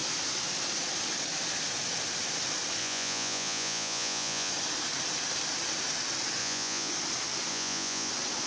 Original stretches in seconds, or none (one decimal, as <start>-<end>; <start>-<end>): 0.0-2.8; 4.5-6.4; 6.9-7.5; 8.1-8.5